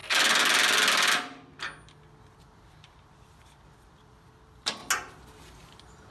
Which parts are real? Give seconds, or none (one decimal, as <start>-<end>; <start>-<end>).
0.0-2.4; 4.8-6.1